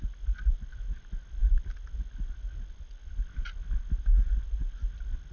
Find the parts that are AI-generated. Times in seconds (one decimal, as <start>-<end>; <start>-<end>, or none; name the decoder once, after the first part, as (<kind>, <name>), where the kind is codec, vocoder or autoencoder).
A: none